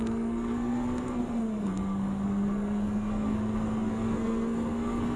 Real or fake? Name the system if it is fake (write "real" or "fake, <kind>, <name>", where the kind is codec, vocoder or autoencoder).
fake, codec, SNAC